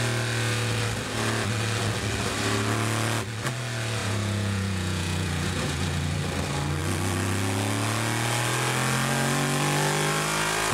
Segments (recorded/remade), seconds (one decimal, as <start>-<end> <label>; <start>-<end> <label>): 0.0-4.0 recorded; 4.0-6.2 remade; 6.2-10.7 recorded